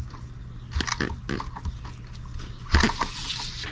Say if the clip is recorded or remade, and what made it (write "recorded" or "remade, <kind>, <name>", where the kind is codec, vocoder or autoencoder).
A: recorded